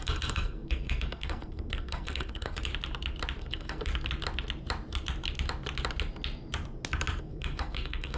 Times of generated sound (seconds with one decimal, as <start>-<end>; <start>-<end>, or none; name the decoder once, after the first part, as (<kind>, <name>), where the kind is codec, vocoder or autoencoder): 0.0-2.7 (codec, SNAC); 3.4-3.9; 7.2-8.2